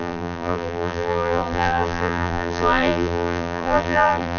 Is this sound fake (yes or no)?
yes